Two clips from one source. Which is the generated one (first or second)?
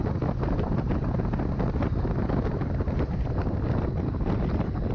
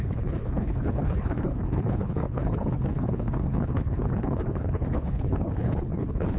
second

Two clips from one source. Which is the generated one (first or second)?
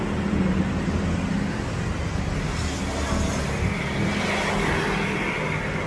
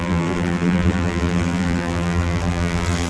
second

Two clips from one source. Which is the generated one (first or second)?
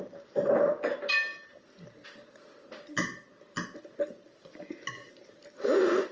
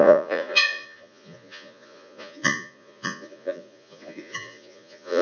second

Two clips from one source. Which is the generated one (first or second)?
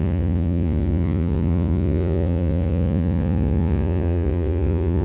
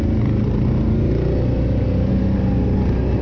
first